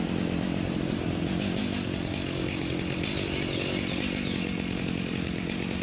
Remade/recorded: recorded